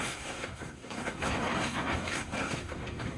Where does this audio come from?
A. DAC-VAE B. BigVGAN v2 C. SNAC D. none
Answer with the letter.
C